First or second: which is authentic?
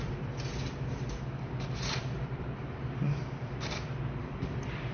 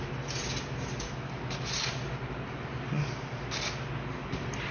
second